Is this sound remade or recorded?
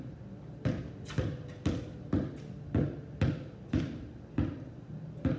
recorded